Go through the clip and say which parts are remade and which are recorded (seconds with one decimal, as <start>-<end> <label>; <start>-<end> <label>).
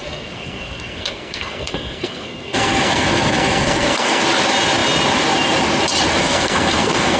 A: 0.0-4.2 remade; 4.2-6.2 recorded; 6.2-7.2 remade